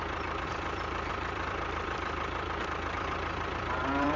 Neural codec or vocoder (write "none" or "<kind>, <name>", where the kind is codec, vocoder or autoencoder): vocoder, BigVGAN v2